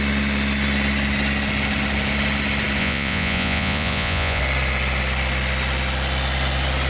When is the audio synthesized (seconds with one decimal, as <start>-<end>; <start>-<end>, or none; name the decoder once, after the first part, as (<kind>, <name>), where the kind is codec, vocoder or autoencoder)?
2.8-4.4 (vocoder, Vocos)